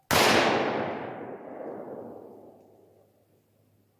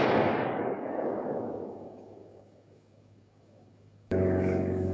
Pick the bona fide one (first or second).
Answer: first